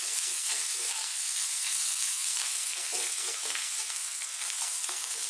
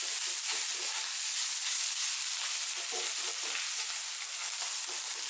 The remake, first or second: first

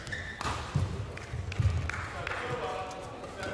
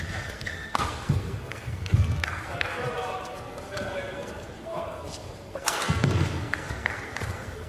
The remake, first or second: second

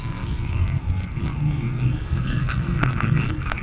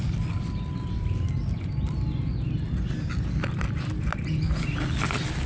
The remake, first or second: first